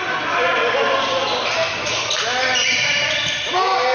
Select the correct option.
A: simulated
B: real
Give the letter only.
B